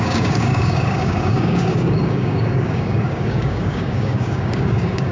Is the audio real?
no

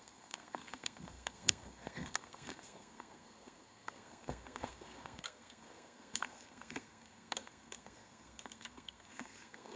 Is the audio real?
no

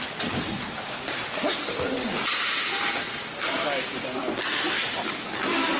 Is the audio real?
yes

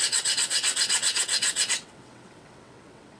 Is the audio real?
no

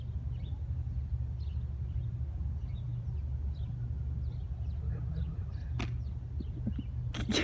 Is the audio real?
yes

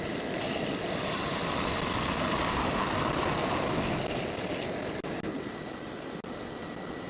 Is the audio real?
yes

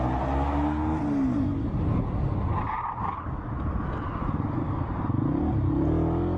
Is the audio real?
yes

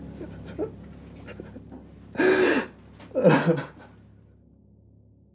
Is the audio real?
yes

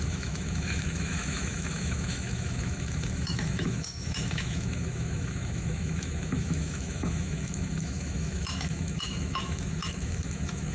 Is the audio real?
no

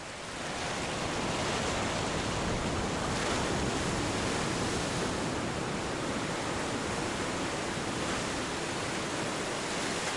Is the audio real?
yes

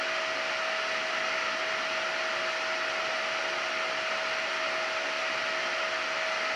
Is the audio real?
yes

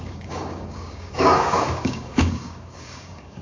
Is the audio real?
no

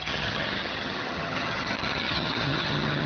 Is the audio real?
no